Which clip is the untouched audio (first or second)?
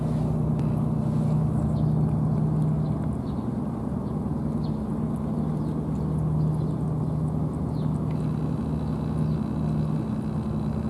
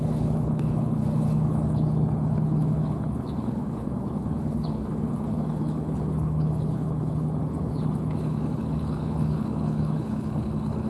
first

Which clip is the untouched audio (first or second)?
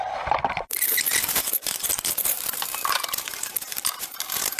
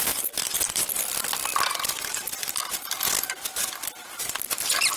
second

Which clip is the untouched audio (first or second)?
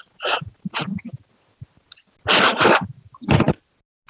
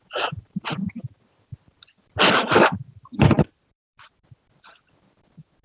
first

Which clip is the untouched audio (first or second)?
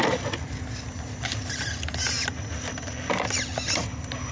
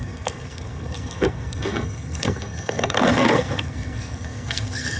first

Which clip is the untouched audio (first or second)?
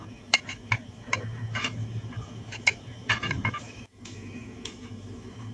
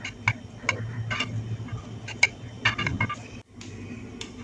second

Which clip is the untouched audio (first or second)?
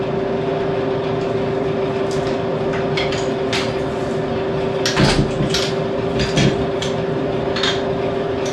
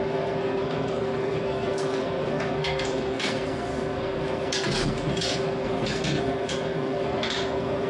first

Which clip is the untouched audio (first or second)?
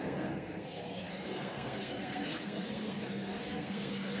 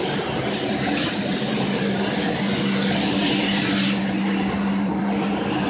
second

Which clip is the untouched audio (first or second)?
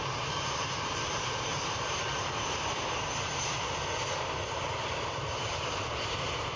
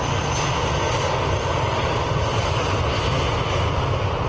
second